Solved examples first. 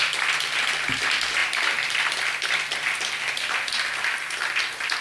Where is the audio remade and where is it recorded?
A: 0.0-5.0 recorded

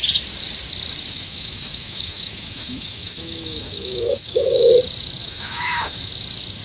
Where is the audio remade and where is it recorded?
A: 0.0-1.1 recorded; 1.1-4.7 remade; 4.7-5.2 recorded; 5.2-6.1 remade; 6.1-6.6 recorded

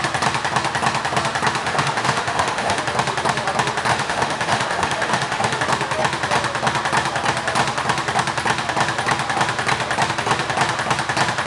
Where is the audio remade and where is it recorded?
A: 0.0-1.6 recorded; 1.6-2.8 remade; 2.8-3.9 recorded; 3.9-5.6 remade; 5.6-11.5 recorded

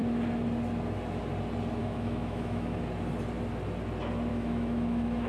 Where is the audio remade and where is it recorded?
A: 0.0-1.8 recorded; 1.8-2.8 remade; 2.8-4.3 recorded; 4.3-5.3 remade

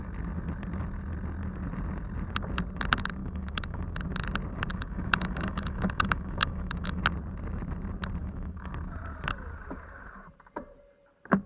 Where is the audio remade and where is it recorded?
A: 0.0-3.2 recorded; 3.2-3.8 remade; 3.8-4.7 recorded; 4.7-7.0 remade; 7.0-8.2 recorded; 8.2-8.7 remade; 8.7-11.5 recorded

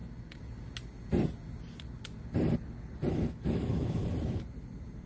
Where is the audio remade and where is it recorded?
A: 0.0-3.1 recorded; 3.1-4.0 remade; 4.0-5.1 recorded

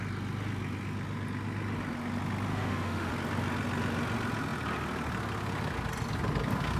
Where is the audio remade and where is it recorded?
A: 0.0-2.5 recorded; 2.5-3.1 remade; 3.1-6.8 recorded

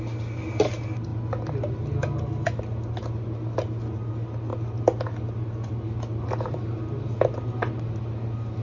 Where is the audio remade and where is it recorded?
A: 0.0-8.6 recorded